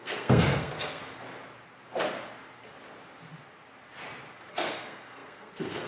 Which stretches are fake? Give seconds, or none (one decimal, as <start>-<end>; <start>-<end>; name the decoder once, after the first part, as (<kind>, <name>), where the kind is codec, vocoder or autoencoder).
0.0-1.0 (codec, SNAC); 4.5-5.9